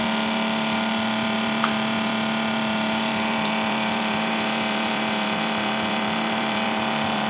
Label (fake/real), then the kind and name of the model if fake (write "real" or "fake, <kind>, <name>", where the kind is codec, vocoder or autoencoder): fake, vocoder, BigVGAN v2